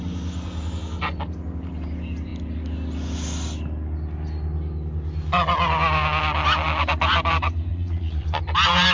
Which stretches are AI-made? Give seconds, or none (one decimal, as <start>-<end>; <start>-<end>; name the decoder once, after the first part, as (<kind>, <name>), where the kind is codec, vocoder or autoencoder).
7.7-8.4 (vocoder, Vocos)